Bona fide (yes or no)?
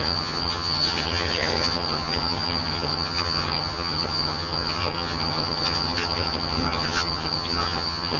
no